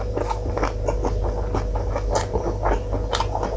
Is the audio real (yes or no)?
yes